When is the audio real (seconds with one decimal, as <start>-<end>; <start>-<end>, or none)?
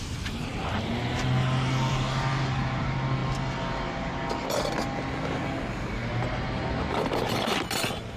0.5-1.9; 3.2-8.2